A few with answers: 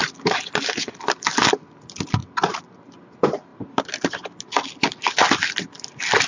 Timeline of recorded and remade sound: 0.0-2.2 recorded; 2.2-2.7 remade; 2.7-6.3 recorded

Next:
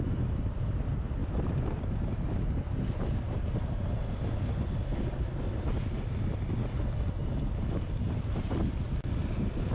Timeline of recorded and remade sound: 0.0-9.7 recorded